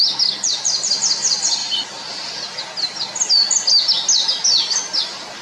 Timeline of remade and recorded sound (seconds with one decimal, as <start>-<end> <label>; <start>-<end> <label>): 0.0-5.4 recorded